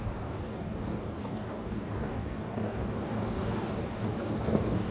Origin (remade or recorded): remade